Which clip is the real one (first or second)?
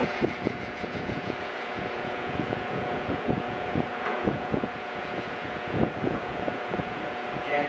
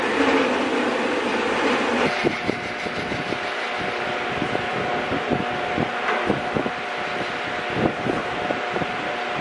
second